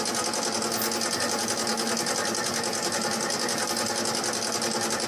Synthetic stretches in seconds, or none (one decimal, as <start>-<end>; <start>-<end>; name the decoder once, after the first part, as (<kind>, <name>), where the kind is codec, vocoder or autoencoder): none